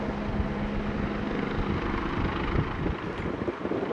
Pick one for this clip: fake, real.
real